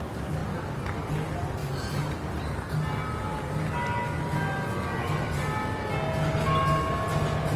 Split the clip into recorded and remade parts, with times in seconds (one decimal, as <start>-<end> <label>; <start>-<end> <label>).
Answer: 0.0-0.4 recorded; 0.4-1.0 remade; 1.0-7.6 recorded